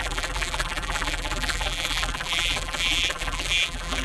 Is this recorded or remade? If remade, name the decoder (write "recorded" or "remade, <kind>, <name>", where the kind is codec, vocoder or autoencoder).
remade, vocoder, BigVGAN v2